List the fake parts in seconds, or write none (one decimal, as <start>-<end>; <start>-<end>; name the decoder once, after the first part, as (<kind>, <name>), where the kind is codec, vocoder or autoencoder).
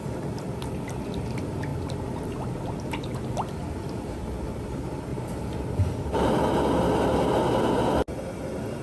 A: 1.7-3.2 (vocoder, BigVGAN v2); 5.1-6.5